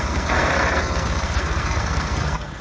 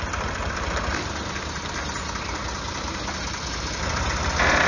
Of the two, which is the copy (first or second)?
first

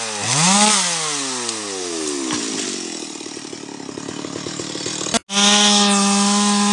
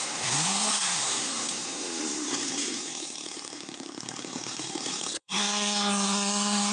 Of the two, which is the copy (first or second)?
second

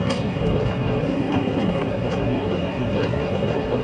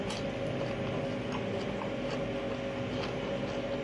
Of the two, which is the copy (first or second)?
first